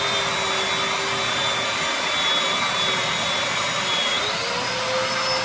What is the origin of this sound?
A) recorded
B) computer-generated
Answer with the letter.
A